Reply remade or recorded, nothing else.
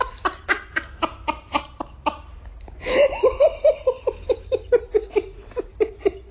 remade